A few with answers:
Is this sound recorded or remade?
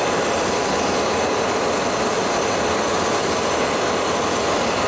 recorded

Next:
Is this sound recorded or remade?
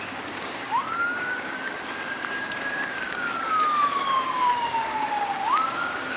remade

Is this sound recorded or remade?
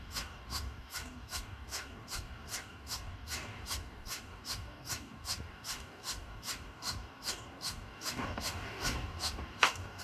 remade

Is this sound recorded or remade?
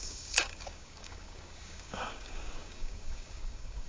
remade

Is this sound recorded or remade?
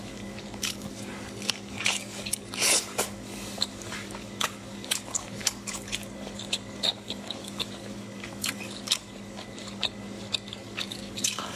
remade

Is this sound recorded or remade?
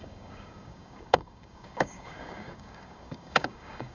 remade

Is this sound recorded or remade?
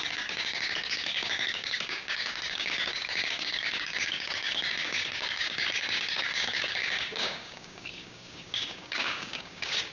remade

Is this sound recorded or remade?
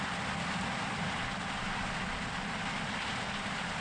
recorded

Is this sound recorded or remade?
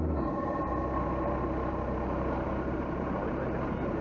recorded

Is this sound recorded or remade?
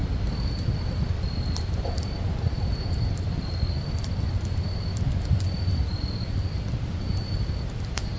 recorded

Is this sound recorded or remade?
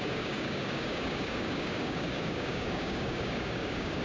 remade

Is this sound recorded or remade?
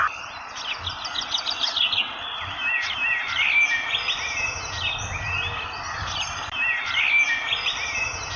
recorded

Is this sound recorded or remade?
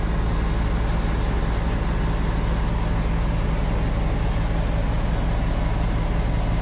recorded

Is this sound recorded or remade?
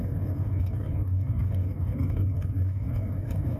remade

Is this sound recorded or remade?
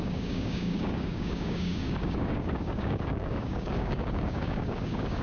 remade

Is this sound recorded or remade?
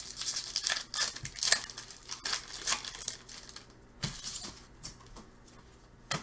recorded